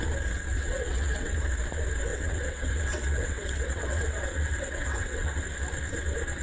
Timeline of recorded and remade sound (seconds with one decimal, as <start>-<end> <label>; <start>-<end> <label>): 0.0-0.5 recorded; 0.5-1.3 remade; 1.3-2.1 recorded; 2.1-5.4 remade; 5.4-6.4 recorded